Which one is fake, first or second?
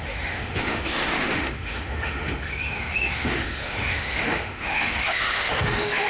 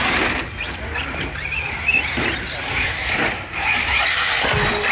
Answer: first